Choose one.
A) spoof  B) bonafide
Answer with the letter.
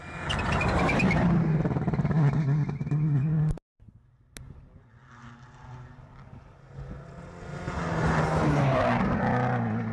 B